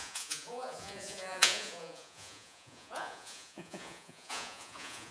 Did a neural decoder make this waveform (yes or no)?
yes